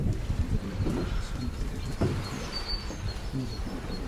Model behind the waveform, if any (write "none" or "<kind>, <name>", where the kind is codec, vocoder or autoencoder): vocoder, BigVGAN v2